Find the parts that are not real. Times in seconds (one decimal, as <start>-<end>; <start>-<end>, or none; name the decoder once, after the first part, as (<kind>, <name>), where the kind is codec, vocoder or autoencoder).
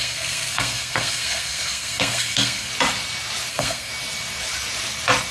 0.0-2.7 (codec, SNAC); 3.5-3.9